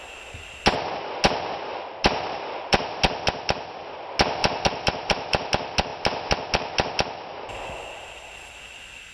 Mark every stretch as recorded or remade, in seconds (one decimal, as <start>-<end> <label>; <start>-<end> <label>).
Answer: 0.0-1.7 recorded; 1.7-2.9 remade; 2.9-4.4 recorded; 4.4-5.5 remade; 5.5-9.1 recorded